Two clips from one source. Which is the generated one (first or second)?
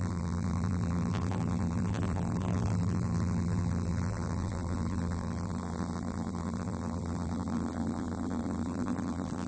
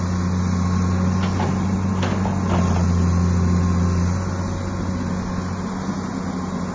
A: first